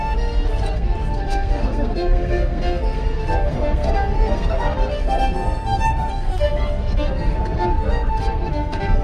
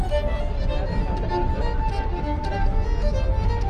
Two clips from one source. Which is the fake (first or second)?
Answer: first